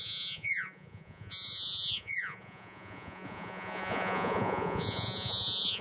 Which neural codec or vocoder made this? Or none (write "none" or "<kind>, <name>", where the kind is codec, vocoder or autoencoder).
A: vocoder, Vocos